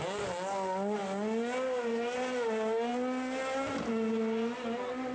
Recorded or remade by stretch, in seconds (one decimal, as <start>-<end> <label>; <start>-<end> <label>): 0.0-5.1 recorded